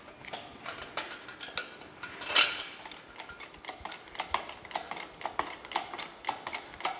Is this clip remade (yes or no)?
no